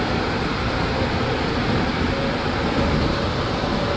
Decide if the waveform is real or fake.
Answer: real